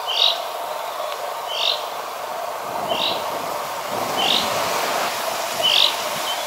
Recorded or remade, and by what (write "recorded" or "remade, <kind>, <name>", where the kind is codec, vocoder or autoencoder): recorded